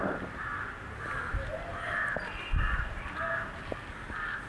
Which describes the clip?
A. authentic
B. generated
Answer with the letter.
A